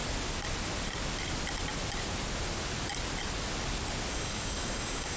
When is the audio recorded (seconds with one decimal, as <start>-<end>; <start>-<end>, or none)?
0.0-4.1